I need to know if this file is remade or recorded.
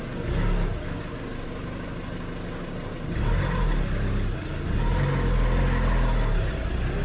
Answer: recorded